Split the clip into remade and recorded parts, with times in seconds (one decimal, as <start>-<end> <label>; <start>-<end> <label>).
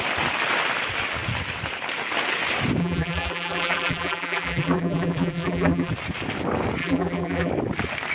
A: 0.0-2.8 recorded; 2.8-5.9 remade; 5.9-6.8 recorded; 6.8-7.5 remade; 7.5-8.1 recorded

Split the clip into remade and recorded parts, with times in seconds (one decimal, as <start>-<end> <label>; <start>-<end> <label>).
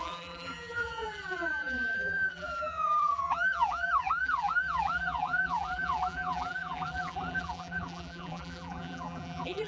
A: 0.0-9.7 remade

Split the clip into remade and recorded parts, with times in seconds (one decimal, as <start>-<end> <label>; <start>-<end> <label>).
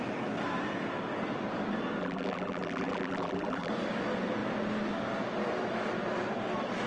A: 0.0-2.0 recorded; 2.0-3.7 remade; 3.7-6.9 recorded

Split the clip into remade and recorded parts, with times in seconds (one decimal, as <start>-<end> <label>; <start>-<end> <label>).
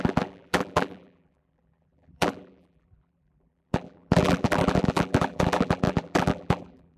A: 0.0-7.0 remade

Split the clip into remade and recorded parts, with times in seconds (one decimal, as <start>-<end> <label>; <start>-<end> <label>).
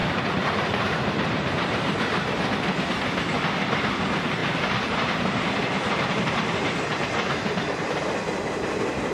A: 0.0-2.5 remade; 2.5-4.4 recorded; 4.4-8.1 remade; 8.1-9.1 recorded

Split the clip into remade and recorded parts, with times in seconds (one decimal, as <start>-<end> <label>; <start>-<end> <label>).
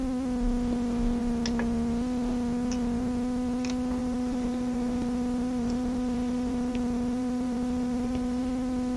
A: 0.0-4.0 recorded; 4.0-8.4 remade; 8.4-9.0 recorded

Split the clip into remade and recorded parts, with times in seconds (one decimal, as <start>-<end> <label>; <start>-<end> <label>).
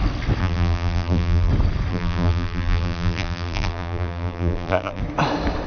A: 0.0-0.4 recorded; 0.4-1.5 remade; 1.5-1.9 recorded; 1.9-5.0 remade; 5.0-5.7 recorded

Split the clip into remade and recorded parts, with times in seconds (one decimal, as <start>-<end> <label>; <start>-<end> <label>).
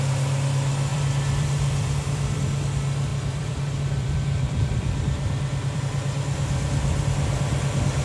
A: 0.0-0.9 recorded; 0.9-2.4 remade; 2.4-3.1 recorded; 3.1-5.8 remade; 5.8-8.0 recorded